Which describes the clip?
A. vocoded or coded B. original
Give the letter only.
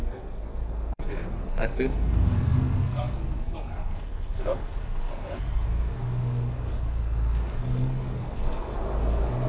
A